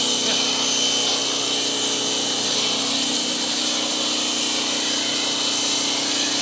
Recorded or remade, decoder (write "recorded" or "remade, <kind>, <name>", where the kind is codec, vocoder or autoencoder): recorded